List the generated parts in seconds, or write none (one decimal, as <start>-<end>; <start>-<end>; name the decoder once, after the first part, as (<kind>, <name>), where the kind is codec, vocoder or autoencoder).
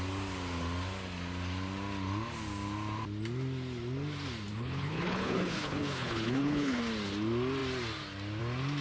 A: 4.5-6.8 (codec, HILCodec)